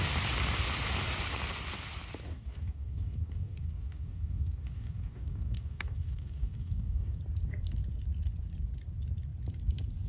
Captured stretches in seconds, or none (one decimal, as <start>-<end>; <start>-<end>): 0.0-2.3; 7.2-10.1